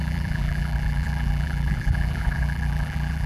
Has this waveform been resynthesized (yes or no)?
yes